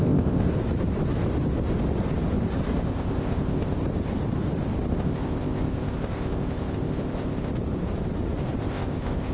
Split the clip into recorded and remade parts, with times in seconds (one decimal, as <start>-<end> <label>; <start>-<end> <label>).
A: 0.0-0.5 remade; 0.5-2.8 recorded; 2.8-3.8 remade; 3.8-4.9 recorded; 4.9-7.5 remade; 7.5-8.6 recorded; 8.6-9.3 remade